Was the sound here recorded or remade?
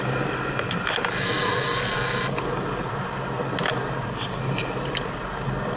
recorded